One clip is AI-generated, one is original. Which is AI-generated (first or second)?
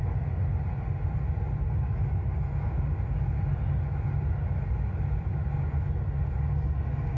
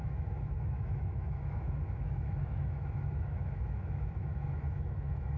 second